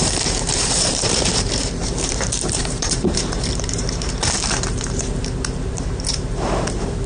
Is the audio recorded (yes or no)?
no